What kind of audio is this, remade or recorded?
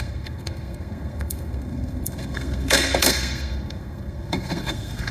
remade